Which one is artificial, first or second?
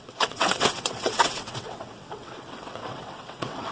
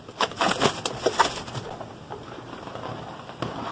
first